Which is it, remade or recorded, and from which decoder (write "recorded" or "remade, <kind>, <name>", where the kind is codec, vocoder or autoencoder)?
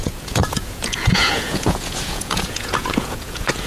remade, vocoder, Vocos